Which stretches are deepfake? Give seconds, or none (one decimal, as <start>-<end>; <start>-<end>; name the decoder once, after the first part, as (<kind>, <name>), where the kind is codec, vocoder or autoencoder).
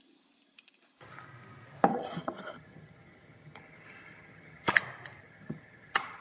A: 1.9-4.7 (vocoder, HiFi-GAN); 5.2-6.2